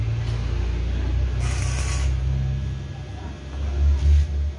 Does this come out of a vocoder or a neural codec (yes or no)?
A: no